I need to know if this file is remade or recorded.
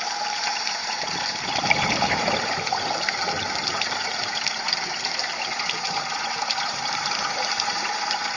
remade